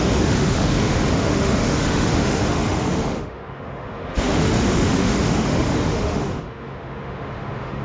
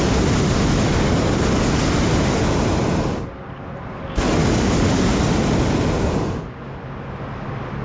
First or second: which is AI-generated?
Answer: first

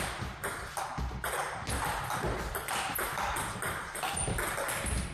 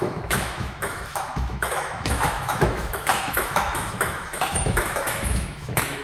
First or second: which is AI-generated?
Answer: second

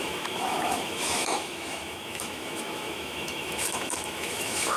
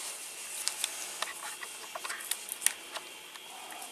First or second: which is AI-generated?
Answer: first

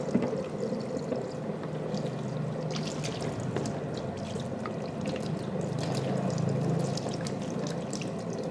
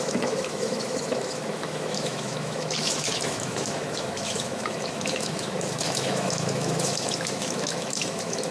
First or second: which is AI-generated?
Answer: second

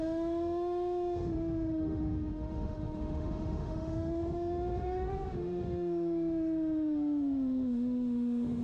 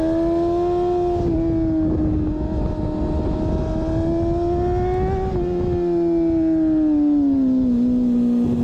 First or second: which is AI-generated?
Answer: first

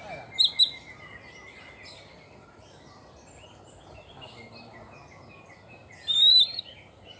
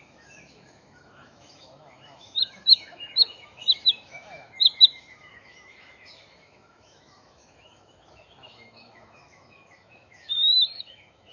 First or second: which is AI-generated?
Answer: second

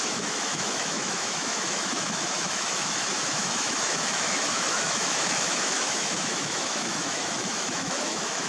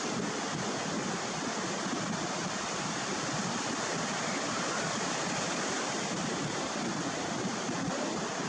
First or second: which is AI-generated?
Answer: first